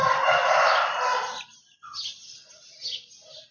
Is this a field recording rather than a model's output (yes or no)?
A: yes